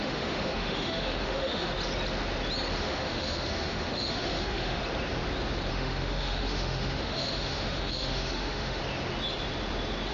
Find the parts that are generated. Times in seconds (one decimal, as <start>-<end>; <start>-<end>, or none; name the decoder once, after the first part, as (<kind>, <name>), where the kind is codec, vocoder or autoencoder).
0.0-1.7 (autoencoder, DAC-VAE); 2.8-4.8; 5.7-8.8